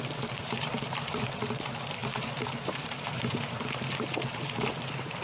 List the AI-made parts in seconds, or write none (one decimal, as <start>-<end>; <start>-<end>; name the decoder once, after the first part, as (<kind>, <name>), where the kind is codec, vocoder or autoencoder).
0.4-1.5 (vocoder, BigVGAN v2); 2.0-5.2